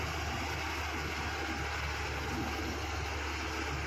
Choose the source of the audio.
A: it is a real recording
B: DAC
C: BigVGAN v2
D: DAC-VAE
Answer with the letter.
A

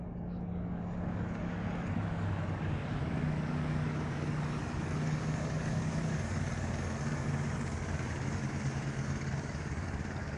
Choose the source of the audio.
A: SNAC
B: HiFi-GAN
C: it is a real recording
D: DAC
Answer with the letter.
D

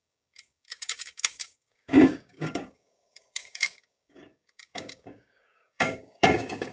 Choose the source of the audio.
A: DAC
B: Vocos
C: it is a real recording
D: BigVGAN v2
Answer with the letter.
A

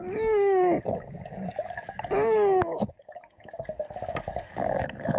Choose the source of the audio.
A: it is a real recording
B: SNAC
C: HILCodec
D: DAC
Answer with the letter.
D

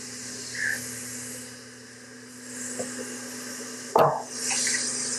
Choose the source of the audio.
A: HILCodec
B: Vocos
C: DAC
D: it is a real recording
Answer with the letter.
D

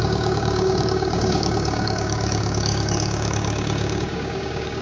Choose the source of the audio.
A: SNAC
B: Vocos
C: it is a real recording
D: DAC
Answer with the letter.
D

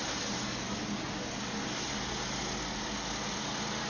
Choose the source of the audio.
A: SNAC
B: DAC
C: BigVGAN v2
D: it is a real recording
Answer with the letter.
D